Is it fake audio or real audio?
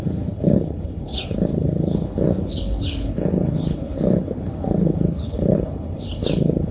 fake